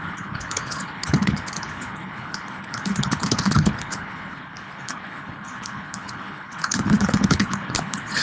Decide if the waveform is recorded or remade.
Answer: remade